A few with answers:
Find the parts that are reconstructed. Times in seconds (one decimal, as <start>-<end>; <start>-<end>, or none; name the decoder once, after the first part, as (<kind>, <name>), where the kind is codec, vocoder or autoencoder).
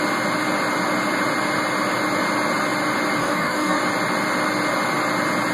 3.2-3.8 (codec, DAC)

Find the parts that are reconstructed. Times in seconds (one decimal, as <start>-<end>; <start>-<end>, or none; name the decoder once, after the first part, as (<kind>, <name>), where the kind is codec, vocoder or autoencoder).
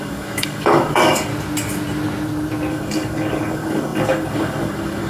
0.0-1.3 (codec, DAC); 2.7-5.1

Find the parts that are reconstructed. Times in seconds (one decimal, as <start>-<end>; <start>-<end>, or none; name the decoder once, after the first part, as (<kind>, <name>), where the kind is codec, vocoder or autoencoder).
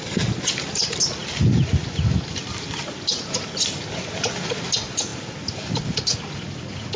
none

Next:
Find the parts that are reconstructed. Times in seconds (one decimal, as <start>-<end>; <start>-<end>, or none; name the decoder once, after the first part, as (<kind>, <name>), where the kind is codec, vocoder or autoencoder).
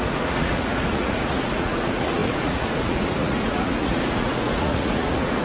0.0-5.4 (vocoder, Vocos)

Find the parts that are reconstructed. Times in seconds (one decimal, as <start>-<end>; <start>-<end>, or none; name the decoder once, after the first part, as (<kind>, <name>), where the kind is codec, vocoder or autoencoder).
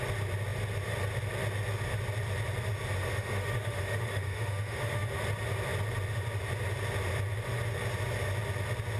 3.1-5.1 (autoencoder, DAC-VAE)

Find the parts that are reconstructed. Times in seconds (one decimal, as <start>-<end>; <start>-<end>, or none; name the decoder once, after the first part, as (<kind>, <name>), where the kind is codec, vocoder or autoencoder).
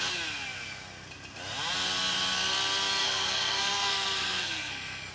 3.0-5.1 (codec, SNAC)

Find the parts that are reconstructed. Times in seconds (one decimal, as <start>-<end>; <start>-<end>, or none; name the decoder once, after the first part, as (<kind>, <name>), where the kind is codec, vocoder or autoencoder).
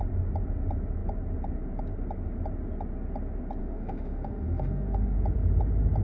3.6-5.2 (autoencoder, DAC-VAE)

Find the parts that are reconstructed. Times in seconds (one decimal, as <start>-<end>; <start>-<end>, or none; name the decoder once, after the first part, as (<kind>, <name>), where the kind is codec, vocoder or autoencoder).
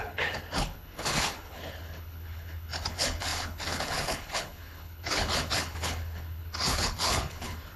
0.0-7.8 (codec, HILCodec)